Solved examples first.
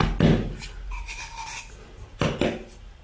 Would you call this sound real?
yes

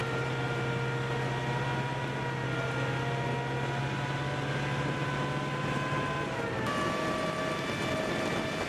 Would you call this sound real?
yes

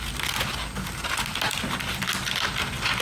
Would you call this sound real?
yes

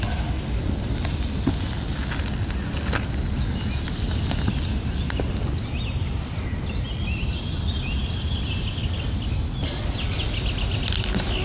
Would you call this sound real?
yes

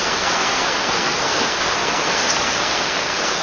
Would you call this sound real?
no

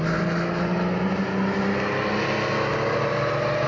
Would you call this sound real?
yes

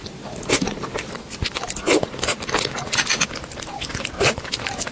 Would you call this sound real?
yes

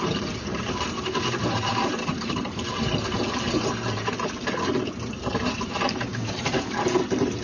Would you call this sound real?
no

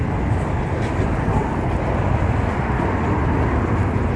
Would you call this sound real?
yes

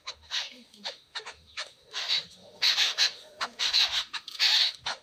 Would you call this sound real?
no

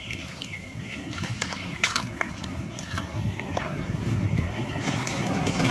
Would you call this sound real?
no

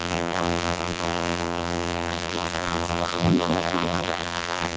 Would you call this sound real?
no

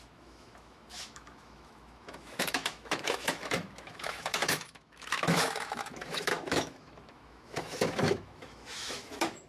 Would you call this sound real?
no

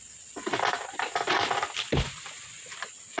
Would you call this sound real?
yes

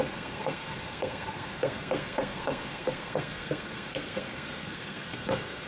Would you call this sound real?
no